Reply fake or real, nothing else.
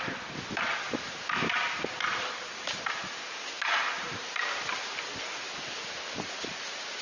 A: fake